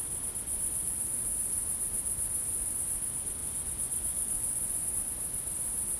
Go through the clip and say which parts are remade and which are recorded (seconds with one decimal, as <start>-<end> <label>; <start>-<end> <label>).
0.0-3.4 recorded; 3.4-4.9 remade; 4.9-6.0 recorded